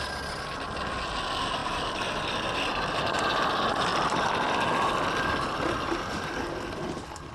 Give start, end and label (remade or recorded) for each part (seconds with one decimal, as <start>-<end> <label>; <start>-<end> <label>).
0.0-7.3 recorded